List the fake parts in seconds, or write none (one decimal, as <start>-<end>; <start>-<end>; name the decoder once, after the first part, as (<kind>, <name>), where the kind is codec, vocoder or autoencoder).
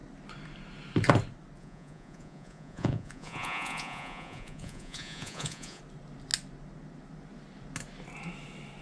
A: 1.6-5.8 (vocoder, Vocos)